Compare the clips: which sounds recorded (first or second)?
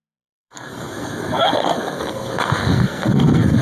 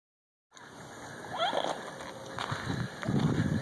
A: second